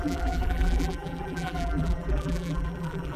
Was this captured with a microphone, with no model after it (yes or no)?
no